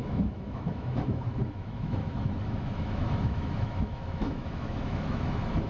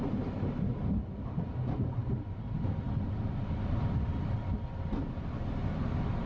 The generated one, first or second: first